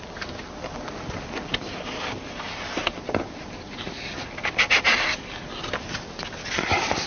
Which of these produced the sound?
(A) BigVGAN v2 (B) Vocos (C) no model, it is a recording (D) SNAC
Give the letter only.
C